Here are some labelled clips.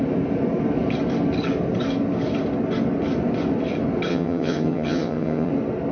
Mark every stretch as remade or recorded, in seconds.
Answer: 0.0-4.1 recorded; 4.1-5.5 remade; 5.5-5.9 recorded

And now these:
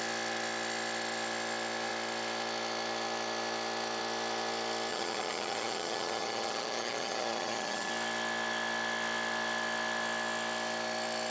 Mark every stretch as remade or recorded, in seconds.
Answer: 0.0-4.9 recorded; 4.9-7.9 remade; 7.9-11.3 recorded

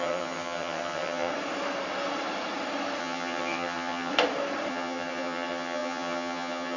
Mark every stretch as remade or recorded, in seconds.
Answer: 0.0-1.3 remade; 1.3-3.0 recorded; 3.0-4.1 remade; 4.1-4.7 recorded; 4.7-6.8 remade

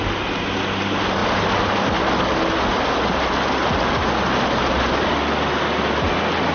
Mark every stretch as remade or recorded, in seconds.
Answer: 0.0-6.5 recorded

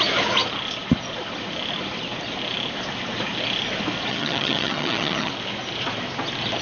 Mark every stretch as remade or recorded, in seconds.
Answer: 0.0-4.1 recorded; 4.1-5.3 remade; 5.3-6.6 recorded

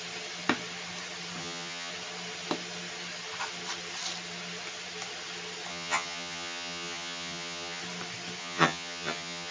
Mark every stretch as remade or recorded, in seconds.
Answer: 0.0-1.4 recorded; 1.4-1.9 remade; 1.9-5.7 recorded; 5.7-7.8 remade; 7.8-8.4 recorded; 8.4-9.5 remade